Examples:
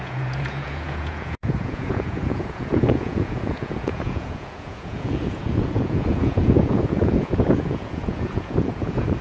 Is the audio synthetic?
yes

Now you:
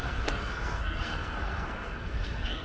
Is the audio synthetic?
yes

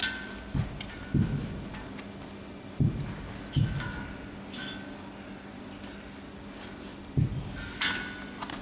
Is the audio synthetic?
no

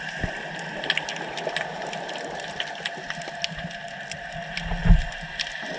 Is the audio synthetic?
no